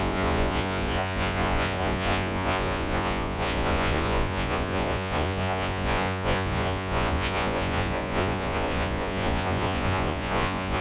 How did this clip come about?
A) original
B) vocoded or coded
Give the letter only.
B